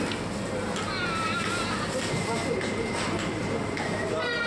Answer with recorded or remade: recorded